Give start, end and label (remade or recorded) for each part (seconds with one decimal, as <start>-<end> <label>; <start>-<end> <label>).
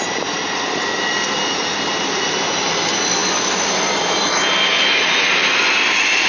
0.0-6.3 recorded